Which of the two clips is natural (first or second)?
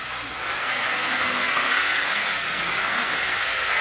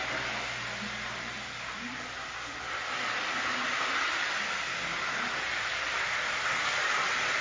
second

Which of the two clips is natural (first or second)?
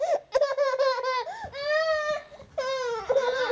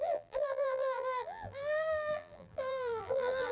first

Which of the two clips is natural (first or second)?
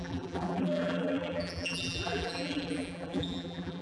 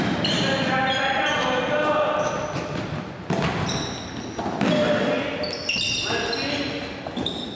second